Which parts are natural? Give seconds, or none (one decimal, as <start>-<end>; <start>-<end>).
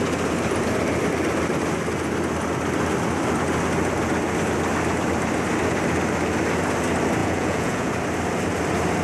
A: 0.0-7.2; 7.9-9.0